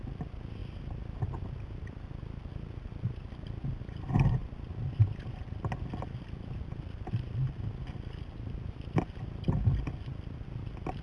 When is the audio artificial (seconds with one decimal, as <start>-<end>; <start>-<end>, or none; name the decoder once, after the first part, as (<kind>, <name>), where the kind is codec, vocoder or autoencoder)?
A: none